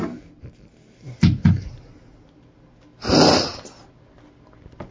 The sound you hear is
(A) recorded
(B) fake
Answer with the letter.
A